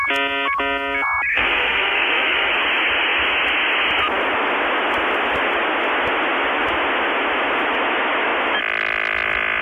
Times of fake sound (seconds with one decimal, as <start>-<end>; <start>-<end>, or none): 1.3-2.5